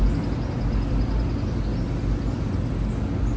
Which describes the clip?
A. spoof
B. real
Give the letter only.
B